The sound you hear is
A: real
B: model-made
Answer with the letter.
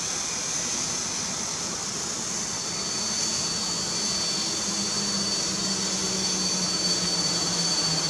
A